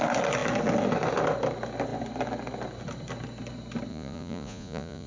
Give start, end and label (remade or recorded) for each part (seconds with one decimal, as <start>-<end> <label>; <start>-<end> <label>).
0.0-3.9 recorded; 3.9-5.1 remade